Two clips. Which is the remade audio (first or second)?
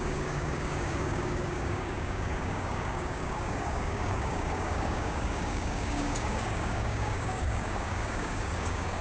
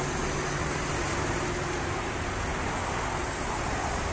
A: first